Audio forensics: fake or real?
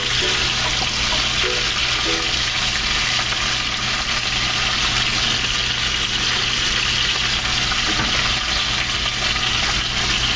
real